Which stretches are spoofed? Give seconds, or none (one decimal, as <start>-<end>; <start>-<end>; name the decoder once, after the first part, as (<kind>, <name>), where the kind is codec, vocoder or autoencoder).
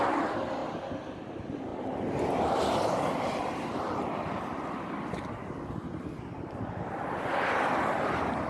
0.6-1.1 (vocoder, BigVGAN v2)